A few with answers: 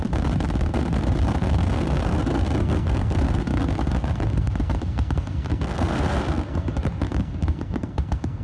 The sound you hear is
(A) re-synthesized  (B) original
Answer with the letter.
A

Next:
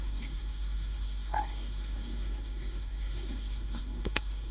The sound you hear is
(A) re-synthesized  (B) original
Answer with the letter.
A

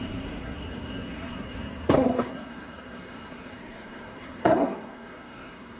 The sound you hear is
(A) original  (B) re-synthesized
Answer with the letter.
B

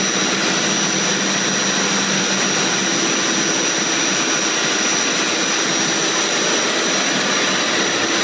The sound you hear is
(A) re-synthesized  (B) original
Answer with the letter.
B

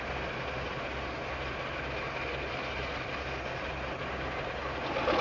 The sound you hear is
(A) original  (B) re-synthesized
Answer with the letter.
A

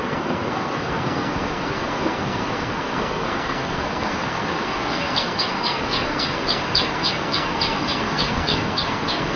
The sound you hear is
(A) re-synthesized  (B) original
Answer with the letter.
A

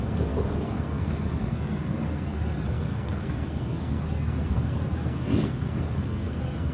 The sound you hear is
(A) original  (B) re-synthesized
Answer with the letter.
B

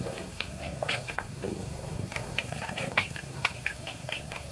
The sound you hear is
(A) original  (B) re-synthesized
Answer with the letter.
B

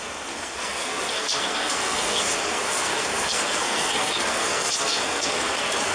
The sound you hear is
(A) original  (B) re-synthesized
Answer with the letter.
B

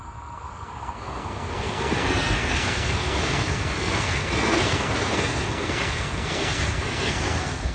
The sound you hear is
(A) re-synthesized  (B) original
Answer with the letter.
A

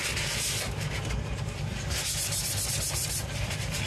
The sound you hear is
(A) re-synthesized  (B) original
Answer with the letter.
B